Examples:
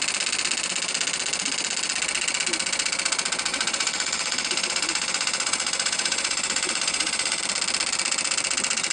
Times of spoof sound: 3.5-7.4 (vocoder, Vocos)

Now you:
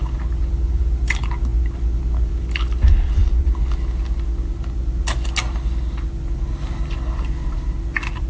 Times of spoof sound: none

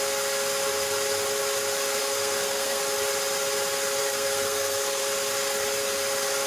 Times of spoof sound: 2.0-2.8 (codec, SNAC); 4.0-5.0

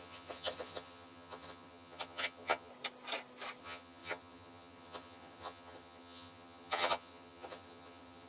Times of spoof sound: 0.0-2.7 (vocoder, HiFi-GAN); 3.6-8.3

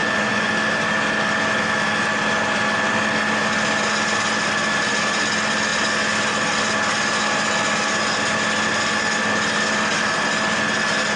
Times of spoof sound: 0.0-0.5 (vocoder, Vocos)